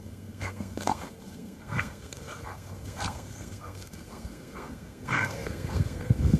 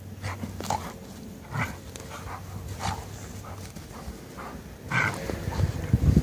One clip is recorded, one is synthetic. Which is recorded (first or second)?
second